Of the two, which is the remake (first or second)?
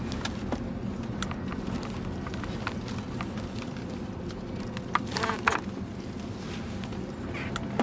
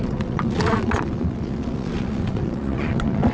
second